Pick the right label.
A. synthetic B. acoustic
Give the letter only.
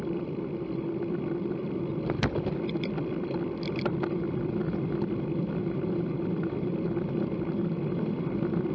B